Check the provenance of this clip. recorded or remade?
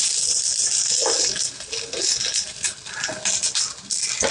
recorded